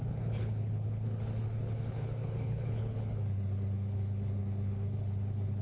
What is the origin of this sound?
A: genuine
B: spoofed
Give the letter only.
B